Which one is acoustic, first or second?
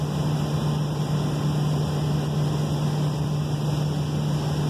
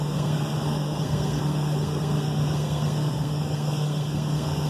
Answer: first